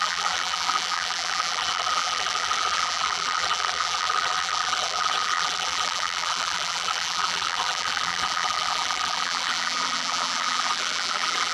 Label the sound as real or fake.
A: fake